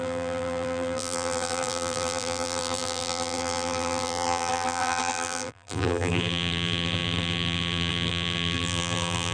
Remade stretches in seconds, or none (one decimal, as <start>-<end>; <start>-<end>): 0.0-9.3